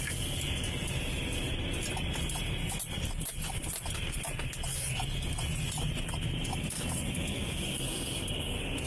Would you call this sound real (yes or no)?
yes